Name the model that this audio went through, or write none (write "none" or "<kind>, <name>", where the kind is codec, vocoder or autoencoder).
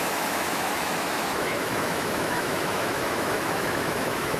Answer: autoencoder, DAC-VAE